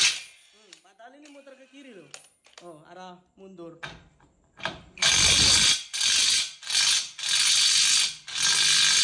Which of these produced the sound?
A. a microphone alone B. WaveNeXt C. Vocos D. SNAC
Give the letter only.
A